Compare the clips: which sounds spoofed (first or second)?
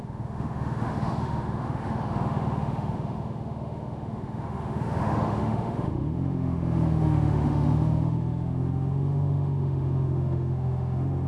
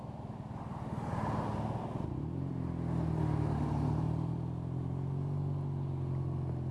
first